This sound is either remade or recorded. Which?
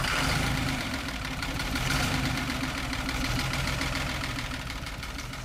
remade